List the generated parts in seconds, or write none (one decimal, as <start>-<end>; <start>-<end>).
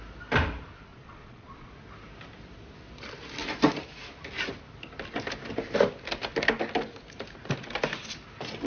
0.9-1.7